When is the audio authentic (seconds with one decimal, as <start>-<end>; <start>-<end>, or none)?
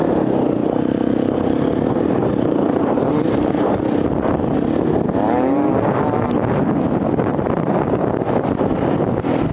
0.0-0.6; 1.7-2.2; 3.8-9.5